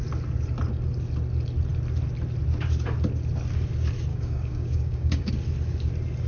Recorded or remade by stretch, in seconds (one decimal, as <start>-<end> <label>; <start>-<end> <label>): 0.0-4.1 recorded; 4.1-5.3 remade; 5.3-6.3 recorded